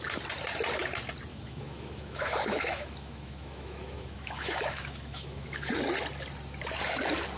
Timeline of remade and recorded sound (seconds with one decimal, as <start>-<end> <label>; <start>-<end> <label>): 0.0-1.3 recorded; 1.3-5.7 remade; 5.7-7.4 recorded